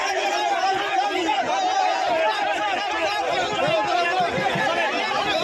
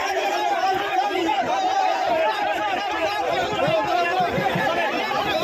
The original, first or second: first